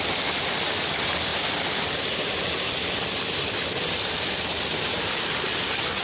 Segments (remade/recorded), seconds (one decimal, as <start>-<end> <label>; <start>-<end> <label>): 0.0-6.0 recorded